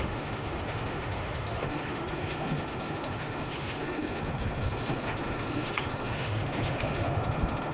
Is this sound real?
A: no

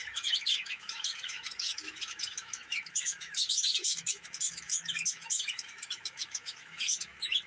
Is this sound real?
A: no